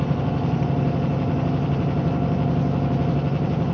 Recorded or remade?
recorded